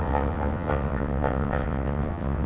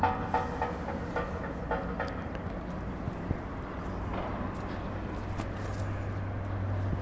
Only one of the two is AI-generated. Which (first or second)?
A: first